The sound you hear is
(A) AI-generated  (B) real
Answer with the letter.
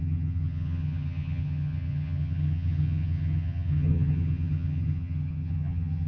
A